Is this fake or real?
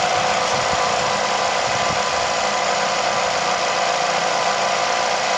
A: real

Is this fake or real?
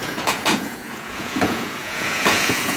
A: fake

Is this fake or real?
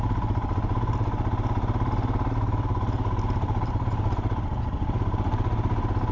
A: real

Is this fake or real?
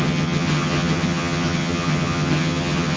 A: fake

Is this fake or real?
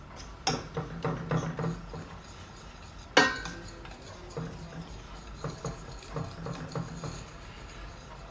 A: real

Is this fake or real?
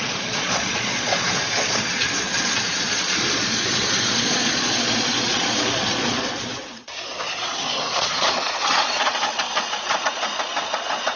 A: fake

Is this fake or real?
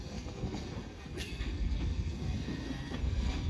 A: fake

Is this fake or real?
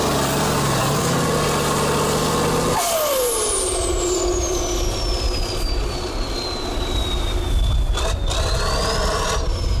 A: real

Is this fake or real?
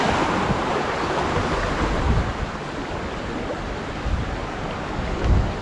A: real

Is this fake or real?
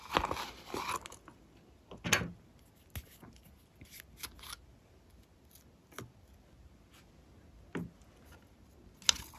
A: real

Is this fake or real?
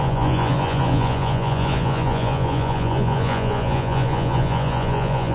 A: fake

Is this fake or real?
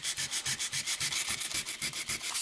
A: real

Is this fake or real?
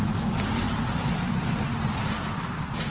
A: real